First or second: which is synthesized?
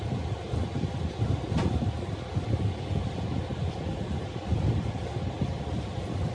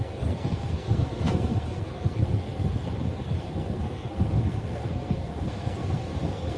second